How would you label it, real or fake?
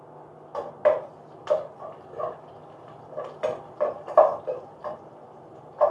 real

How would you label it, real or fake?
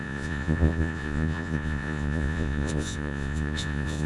fake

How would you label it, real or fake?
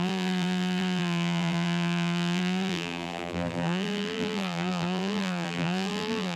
fake